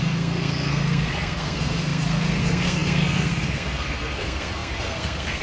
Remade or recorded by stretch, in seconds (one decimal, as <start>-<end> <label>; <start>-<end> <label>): 0.0-5.4 remade